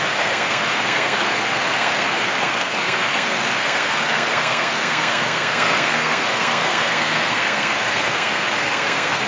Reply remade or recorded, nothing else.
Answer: remade